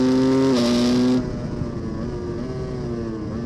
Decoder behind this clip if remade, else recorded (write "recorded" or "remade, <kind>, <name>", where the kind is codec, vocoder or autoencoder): recorded